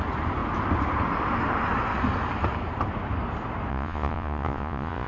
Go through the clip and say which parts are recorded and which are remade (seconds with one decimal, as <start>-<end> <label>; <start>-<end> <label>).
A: 0.0-3.7 recorded; 3.7-5.1 remade